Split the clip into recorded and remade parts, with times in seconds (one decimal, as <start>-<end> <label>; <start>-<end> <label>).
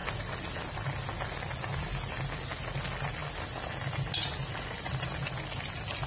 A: 0.0-6.1 recorded